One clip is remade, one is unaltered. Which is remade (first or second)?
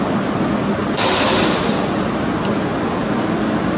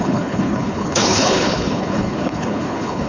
second